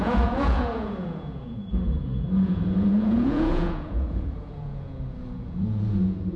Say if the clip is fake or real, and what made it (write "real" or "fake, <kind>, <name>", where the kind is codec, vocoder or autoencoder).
fake, vocoder, Vocos